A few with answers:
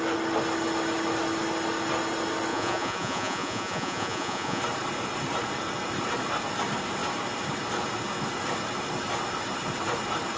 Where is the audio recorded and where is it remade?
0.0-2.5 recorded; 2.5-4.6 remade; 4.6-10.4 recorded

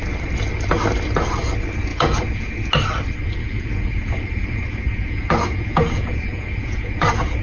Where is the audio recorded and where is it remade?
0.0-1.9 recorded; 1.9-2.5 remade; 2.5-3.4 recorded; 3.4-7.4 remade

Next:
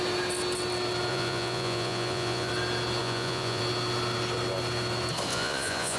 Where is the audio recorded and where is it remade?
0.0-1.1 recorded; 1.1-2.5 remade; 2.5-3.0 recorded; 3.0-3.6 remade; 3.6-5.3 recorded; 5.3-6.0 remade